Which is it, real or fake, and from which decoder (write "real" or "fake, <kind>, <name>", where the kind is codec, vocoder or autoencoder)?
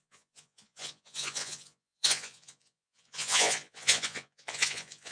fake, vocoder, Vocos